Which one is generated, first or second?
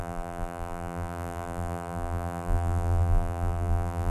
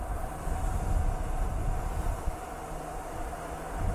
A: first